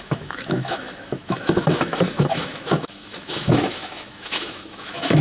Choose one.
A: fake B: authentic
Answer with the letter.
A